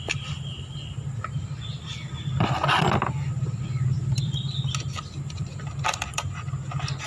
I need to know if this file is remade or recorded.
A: recorded